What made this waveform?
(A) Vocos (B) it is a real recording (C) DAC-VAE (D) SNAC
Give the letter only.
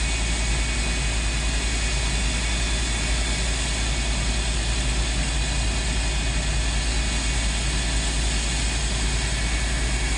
B